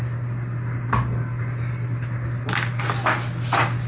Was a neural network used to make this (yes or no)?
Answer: no